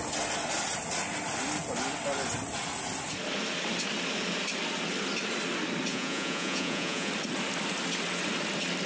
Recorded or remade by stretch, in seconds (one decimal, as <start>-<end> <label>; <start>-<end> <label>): 0.0-5.9 recorded; 5.9-7.1 remade; 7.1-8.9 recorded